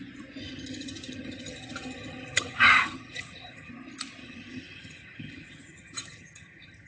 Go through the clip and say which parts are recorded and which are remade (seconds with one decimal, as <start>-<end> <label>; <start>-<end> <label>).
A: 0.0-0.4 recorded; 0.4-3.7 remade; 3.7-4.2 recorded; 4.2-6.9 remade